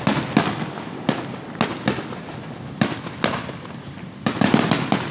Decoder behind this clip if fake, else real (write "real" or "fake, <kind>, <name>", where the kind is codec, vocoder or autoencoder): real